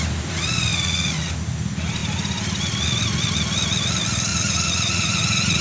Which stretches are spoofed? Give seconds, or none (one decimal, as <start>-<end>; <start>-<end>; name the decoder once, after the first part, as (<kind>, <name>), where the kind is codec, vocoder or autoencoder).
0.7-1.3 (vocoder, Vocos); 4.3-5.6